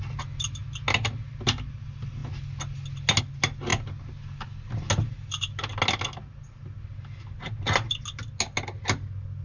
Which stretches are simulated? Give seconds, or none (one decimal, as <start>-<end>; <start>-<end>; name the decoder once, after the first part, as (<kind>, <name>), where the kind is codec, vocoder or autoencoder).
none